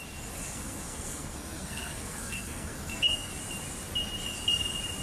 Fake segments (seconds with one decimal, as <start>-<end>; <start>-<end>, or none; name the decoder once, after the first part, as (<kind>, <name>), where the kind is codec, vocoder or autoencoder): 0.4-3.4 (codec, SNAC)